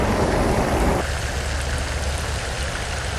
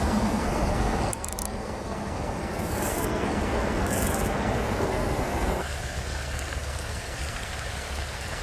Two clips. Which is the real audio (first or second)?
first